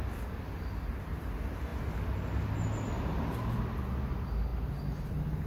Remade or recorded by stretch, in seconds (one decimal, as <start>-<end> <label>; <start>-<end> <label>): 0.0-5.5 recorded

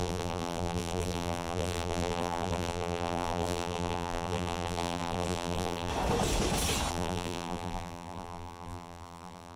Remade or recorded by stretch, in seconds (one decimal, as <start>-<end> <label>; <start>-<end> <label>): 0.0-5.9 remade; 5.9-6.9 recorded; 6.9-9.6 remade